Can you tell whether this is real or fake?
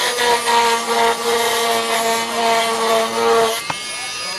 real